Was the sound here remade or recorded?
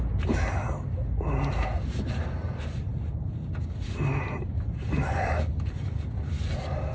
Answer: recorded